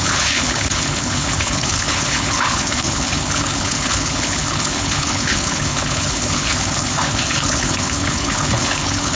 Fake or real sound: fake